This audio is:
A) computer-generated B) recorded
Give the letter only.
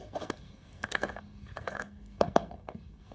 A